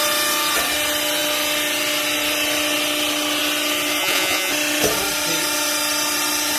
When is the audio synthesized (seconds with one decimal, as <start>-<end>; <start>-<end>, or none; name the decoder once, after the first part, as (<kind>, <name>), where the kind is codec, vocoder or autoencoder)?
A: 4.0-4.5 (vocoder, Vocos)